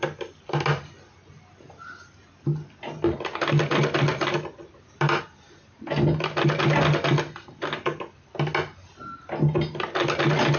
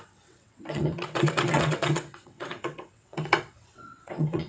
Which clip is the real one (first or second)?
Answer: first